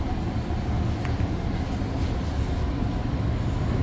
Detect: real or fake real